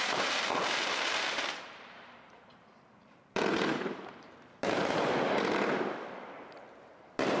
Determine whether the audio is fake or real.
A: fake